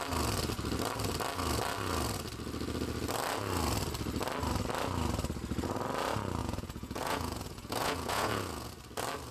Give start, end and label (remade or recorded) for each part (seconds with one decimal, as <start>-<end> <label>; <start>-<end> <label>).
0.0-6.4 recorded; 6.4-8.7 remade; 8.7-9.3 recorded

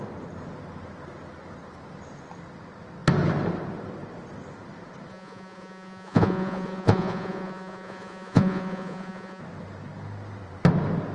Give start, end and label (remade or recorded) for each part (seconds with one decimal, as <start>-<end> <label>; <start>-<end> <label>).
0.0-5.1 recorded; 5.1-9.4 remade; 9.4-11.1 recorded

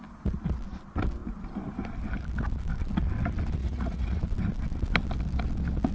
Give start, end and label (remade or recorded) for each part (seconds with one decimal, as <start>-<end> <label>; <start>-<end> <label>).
0.0-3.6 recorded; 3.6-4.2 remade; 4.2-5.9 recorded

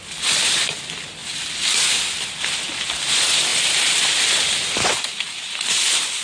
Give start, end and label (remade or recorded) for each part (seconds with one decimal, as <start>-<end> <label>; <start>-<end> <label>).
0.0-6.2 recorded